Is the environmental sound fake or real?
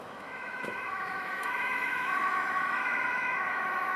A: fake